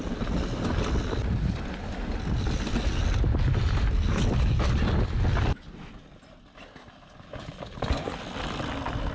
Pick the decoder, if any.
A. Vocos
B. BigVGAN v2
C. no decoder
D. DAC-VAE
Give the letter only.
C